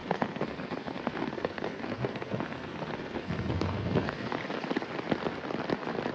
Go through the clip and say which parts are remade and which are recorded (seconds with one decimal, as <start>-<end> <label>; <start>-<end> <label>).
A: 0.0-4.4 remade; 4.4-6.1 recorded